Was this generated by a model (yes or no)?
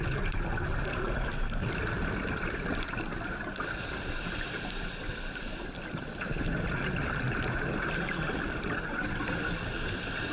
yes